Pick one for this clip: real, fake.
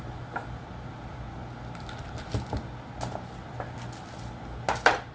real